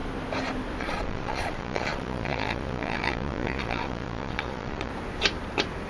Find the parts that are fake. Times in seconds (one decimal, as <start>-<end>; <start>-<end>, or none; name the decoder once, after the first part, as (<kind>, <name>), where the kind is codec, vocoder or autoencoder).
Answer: 0.8-4.9 (vocoder, Vocos)